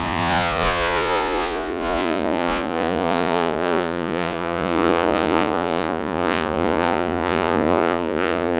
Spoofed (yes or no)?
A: yes